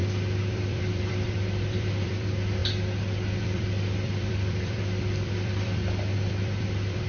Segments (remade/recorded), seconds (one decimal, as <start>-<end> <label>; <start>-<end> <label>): 0.0-2.6 remade; 2.6-3.4 recorded; 3.4-7.1 remade